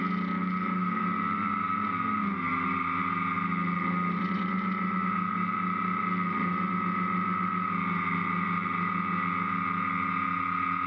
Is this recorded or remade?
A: recorded